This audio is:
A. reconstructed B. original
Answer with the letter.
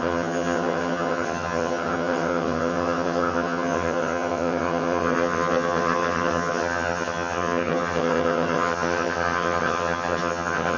A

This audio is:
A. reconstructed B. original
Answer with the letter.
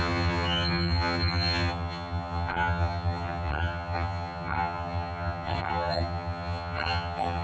A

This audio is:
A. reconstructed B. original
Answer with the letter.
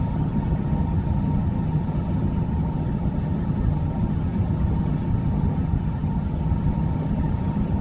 A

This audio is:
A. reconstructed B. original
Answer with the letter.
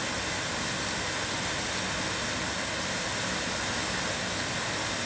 B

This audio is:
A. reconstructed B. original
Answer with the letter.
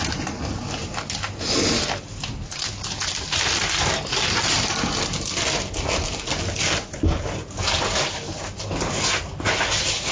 B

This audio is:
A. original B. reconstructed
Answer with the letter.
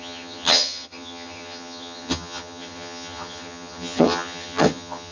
B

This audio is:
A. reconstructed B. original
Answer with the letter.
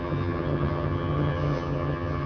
A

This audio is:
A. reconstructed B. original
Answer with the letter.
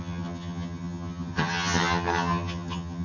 A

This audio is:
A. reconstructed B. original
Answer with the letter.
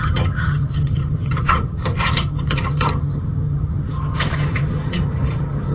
A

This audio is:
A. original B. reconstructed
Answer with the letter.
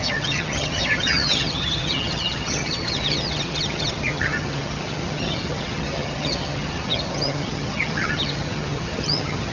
B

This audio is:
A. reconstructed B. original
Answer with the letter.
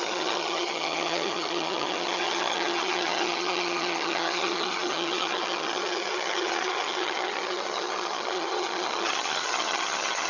A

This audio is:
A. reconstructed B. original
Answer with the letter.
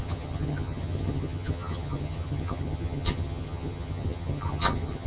A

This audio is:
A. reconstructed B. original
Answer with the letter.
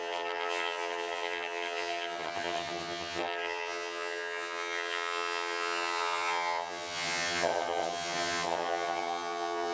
A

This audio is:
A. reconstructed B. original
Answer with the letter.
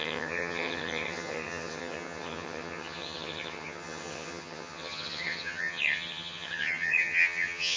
A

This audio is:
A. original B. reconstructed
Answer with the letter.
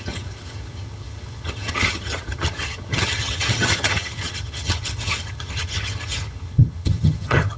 B